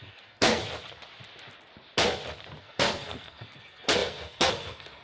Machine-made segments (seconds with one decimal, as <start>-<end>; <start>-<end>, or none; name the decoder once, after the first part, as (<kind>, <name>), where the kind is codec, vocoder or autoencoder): 0.0-0.6 (codec, SNAC); 2.6-5.0